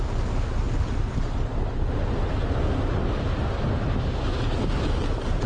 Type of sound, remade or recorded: recorded